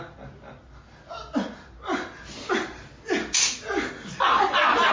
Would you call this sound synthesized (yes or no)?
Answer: no